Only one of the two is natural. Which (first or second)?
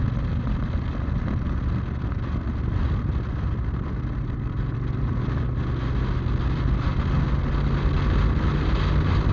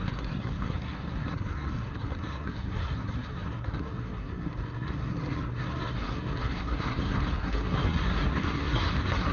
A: first